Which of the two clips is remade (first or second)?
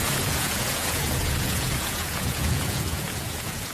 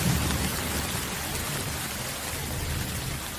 first